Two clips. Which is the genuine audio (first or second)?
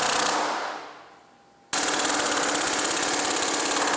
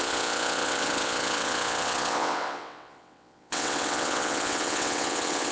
first